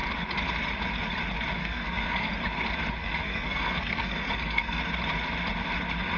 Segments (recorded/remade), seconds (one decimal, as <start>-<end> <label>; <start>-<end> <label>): 0.0-1.6 recorded; 1.6-2.3 remade; 2.3-3.0 recorded; 3.0-4.8 remade; 4.8-6.2 recorded